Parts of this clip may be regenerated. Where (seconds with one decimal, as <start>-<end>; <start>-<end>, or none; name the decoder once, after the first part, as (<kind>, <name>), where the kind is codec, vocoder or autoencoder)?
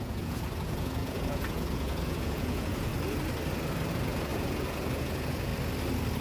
0.0-2.9 (vocoder, Vocos); 3.9-5.5